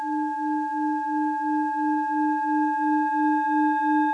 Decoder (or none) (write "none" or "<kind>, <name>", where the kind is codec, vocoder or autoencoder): none